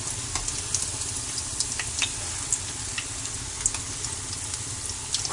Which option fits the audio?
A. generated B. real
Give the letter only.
B